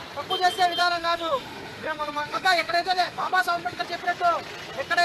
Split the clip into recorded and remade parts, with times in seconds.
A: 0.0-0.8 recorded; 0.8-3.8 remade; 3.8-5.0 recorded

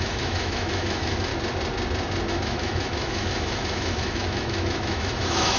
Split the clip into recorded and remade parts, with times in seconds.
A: 0.0-1.3 remade; 1.3-2.3 recorded; 2.3-5.6 remade

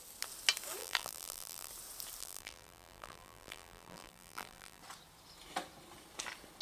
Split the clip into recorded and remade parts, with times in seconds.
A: 0.0-0.8 recorded; 0.8-1.7 remade; 1.7-2.2 recorded; 2.2-4.8 remade; 4.8-6.6 recorded

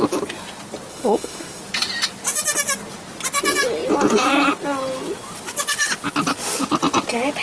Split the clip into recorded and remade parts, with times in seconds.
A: 0.0-0.9 recorded; 0.9-1.6 remade; 1.6-7.4 recorded

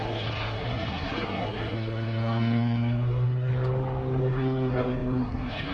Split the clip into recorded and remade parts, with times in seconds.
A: 0.0-3.5 remade; 3.5-4.2 recorded; 4.2-5.7 remade

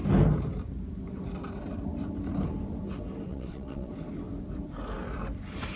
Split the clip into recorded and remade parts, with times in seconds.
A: 0.0-3.3 recorded; 3.3-3.9 remade; 3.9-5.8 recorded

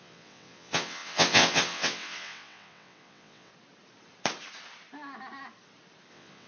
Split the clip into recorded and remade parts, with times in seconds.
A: 0.0-3.5 remade; 3.5-6.1 recorded; 6.1-6.5 remade